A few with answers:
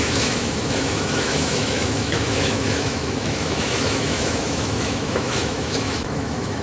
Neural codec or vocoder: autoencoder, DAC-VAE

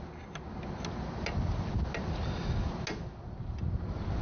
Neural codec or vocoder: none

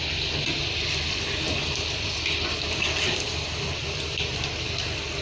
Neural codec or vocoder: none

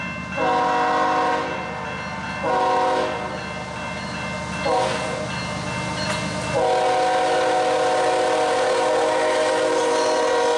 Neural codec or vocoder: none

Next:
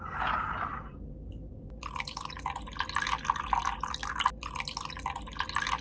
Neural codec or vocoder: none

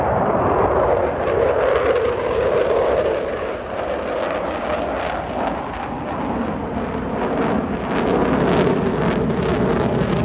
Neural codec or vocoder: none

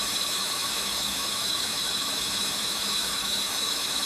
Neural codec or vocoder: autoencoder, DAC-VAE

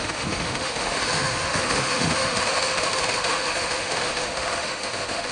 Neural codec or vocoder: autoencoder, DAC-VAE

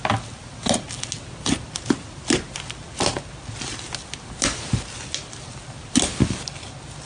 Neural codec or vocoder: none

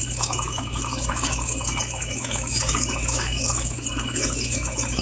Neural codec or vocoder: autoencoder, DAC-VAE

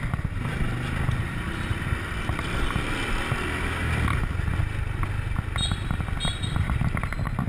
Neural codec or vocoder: none